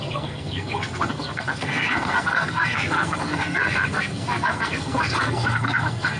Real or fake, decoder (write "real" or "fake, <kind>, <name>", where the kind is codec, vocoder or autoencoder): fake, codec, SNAC